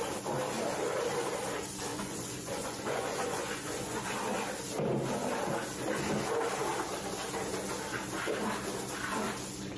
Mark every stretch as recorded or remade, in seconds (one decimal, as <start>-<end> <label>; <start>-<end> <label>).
0.0-1.9 recorded; 1.9-4.0 remade; 4.0-9.8 recorded